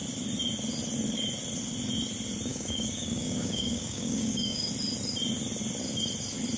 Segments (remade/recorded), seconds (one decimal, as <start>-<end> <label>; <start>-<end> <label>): 0.0-2.5 recorded; 2.5-4.7 remade; 4.7-6.6 recorded